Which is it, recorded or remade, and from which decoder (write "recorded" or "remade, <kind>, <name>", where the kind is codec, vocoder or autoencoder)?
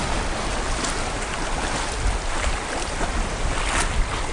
recorded